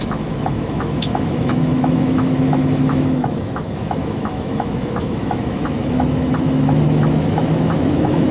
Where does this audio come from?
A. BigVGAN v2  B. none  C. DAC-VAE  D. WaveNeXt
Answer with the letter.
C